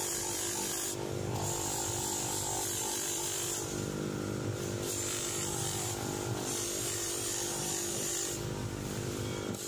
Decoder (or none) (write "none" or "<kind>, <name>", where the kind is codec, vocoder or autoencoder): vocoder, BigVGAN v2